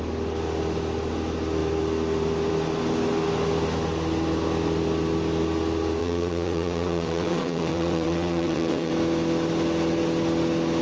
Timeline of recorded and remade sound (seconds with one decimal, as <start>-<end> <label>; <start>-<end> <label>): 0.0-6.0 recorded; 6.0-8.9 remade; 8.9-10.8 recorded